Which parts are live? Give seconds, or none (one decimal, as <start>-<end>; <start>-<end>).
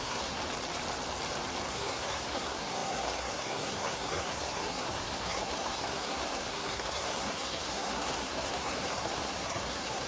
0.4-1.7